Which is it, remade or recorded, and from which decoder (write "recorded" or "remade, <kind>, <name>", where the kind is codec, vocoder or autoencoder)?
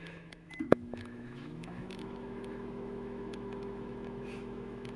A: remade, autoencoder, DAC-VAE